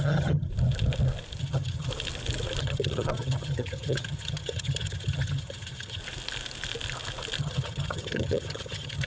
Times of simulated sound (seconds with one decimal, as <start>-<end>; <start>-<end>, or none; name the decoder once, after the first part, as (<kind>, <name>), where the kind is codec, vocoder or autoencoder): 0.0-0.5 (vocoder, HiFi-GAN); 1.4-1.9; 2.6-6.0; 7.4-9.1